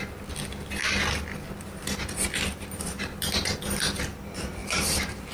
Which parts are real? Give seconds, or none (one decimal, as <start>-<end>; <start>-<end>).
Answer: 0.0-4.6